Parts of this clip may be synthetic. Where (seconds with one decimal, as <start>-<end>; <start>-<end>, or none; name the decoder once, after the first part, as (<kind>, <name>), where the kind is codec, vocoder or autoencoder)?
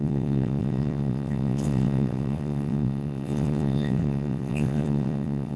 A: 0.0-5.6 (vocoder, WaveNeXt)